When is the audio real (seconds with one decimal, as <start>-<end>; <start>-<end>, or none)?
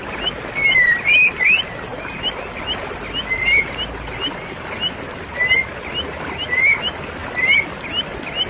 0.0-8.5